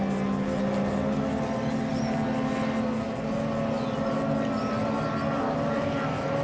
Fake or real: real